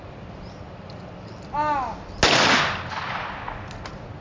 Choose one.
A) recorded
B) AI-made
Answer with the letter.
A